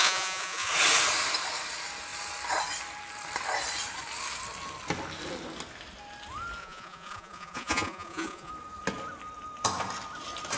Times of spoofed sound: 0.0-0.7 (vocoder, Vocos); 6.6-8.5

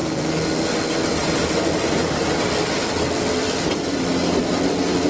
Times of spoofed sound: 0.0-0.6 (vocoder, BigVGAN v2); 1.2-2.5

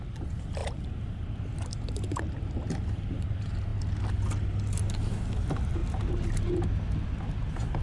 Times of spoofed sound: none

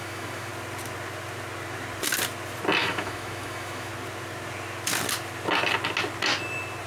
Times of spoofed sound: 0.0-0.5 (autoencoder, DAC-VAE); 2.8-3.9